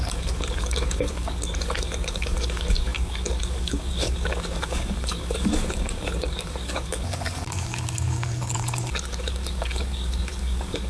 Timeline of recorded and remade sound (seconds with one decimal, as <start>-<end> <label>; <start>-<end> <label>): 0.0-10.9 remade